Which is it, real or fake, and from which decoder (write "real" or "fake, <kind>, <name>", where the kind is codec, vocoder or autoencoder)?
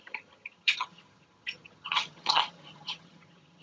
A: fake, vocoder, HiFi-GAN